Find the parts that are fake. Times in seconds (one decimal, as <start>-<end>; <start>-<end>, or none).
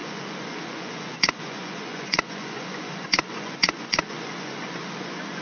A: 0.0-5.4